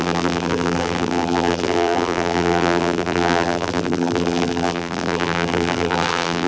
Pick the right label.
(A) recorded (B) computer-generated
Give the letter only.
B